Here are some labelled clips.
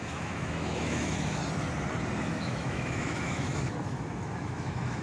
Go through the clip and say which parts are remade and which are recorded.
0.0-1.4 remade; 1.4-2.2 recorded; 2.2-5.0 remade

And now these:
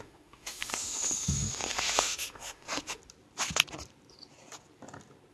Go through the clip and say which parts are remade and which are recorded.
0.0-3.0 remade; 3.0-5.3 recorded

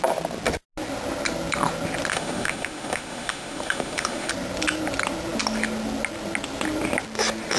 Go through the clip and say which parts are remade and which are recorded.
0.0-2.1 recorded; 2.1-4.3 remade; 4.3-7.6 recorded

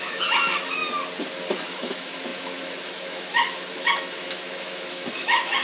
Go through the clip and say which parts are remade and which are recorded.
0.0-0.8 remade; 0.8-1.7 recorded; 1.7-5.6 remade

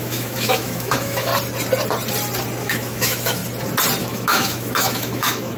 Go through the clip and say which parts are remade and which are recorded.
0.0-1.3 remade; 1.3-2.6 recorded; 2.6-3.4 remade; 3.4-4.0 recorded; 4.0-5.6 remade

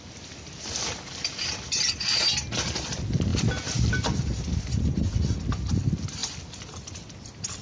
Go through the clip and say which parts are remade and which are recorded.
0.0-7.6 recorded

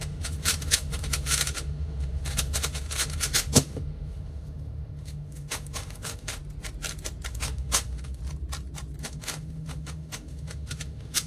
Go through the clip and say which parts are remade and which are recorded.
0.0-6.4 remade; 6.4-7.3 recorded; 7.3-8.2 remade; 8.2-9.0 recorded; 9.0-11.3 remade

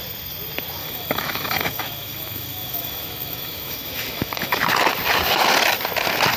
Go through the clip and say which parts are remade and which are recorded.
0.0-0.8 recorded; 0.8-4.6 remade; 4.6-6.4 recorded